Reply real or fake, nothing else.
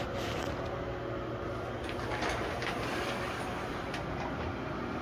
real